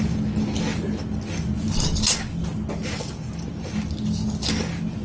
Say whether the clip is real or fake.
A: real